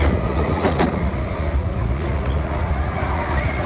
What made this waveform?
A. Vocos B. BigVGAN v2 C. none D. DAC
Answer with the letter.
A